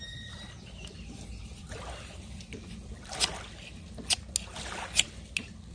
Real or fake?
real